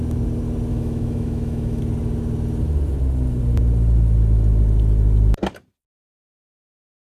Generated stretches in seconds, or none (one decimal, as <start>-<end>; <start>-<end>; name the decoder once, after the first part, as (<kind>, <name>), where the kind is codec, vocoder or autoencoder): 0.7-1.8 (autoencoder, DAC-VAE)